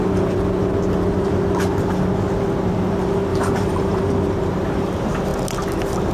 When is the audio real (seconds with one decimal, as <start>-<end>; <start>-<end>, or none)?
0.0-3.3; 4.1-6.1